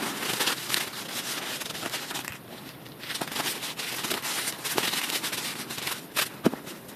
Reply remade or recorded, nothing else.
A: recorded